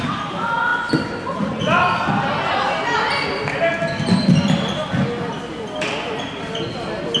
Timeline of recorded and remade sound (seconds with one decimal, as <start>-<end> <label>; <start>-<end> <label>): 0.0-7.2 recorded